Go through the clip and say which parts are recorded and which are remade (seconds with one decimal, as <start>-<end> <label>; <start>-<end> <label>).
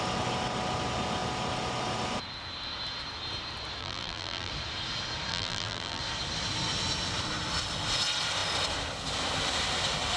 0.0-3.8 recorded; 3.8-4.5 remade; 4.5-5.3 recorded; 5.3-6.0 remade; 6.0-10.2 recorded